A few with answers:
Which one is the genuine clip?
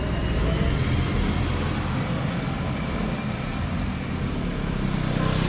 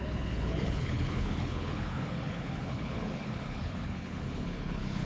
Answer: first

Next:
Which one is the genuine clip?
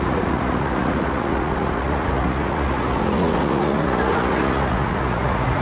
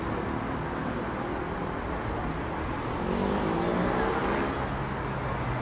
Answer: second